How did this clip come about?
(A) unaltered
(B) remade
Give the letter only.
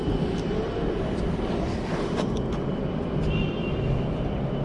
A